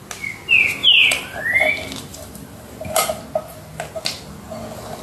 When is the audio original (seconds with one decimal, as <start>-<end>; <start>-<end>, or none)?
0.0-0.8; 1.7-2.1; 3.2-5.0